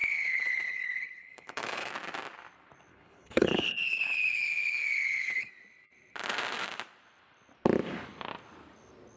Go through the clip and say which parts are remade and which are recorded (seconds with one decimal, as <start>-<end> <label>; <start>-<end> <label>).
0.0-1.9 remade; 1.9-2.9 recorded; 2.9-5.5 remade; 5.5-9.2 recorded